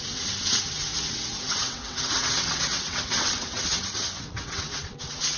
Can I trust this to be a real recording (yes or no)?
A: no